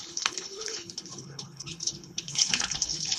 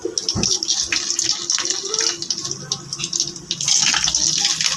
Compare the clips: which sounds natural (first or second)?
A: second